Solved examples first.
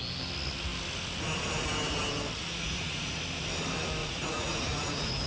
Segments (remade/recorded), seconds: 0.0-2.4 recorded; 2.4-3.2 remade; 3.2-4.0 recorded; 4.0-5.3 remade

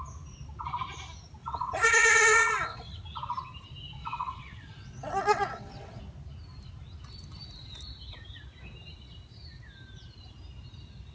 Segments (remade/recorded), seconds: 0.0-1.4 recorded; 1.4-3.0 remade; 3.0-4.0 recorded; 4.0-6.0 remade; 6.0-11.1 recorded

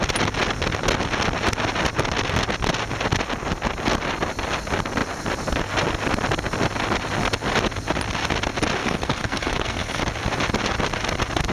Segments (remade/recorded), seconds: 0.0-8.8 recorded; 8.8-10.0 remade; 10.0-11.5 recorded